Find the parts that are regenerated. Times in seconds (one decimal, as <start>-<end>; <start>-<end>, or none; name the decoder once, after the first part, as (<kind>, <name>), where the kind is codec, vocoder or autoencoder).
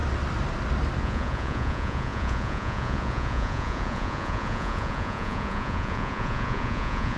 1.0-7.2 (vocoder, Vocos)